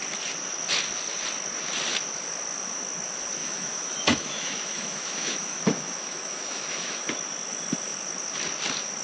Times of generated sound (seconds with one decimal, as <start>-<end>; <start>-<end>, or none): 3.4-7.1